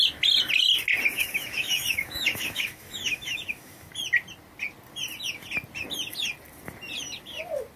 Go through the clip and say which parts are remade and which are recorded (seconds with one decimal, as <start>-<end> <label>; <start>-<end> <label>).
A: 0.0-1.1 recorded; 1.1-3.9 remade; 3.9-7.8 recorded